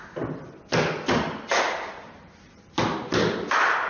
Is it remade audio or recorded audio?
recorded